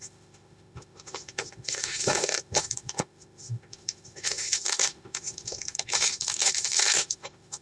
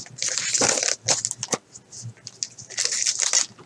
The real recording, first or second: second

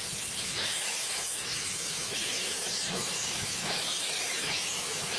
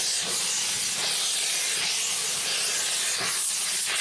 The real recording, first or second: second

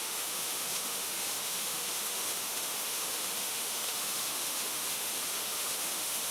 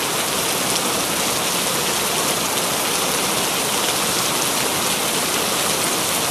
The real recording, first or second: second